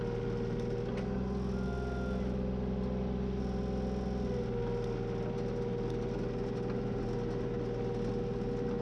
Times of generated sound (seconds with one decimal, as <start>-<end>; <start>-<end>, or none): none